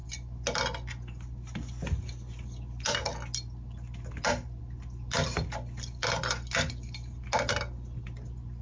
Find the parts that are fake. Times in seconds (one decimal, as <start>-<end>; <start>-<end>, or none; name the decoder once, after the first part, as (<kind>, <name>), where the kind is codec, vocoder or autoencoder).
none